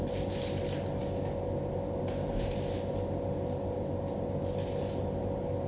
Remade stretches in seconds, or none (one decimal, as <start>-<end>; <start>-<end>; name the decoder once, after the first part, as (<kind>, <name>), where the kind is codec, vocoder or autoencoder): none